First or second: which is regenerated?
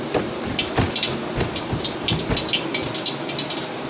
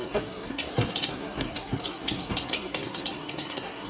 second